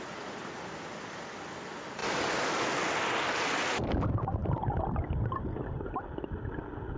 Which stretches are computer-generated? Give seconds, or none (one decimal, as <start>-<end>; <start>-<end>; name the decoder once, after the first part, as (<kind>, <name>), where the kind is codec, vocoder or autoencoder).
none